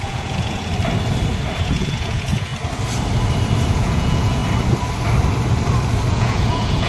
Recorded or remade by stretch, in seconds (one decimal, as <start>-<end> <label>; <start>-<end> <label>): 0.0-0.7 remade; 0.7-1.6 recorded; 1.6-2.5 remade; 2.5-3.7 recorded; 3.7-4.4 remade; 4.4-6.1 recorded; 6.1-6.9 remade

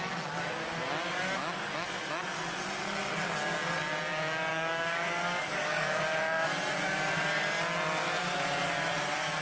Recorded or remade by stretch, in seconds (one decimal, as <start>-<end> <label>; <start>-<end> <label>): 0.0-4.5 recorded; 4.5-6.0 remade; 6.0-9.4 recorded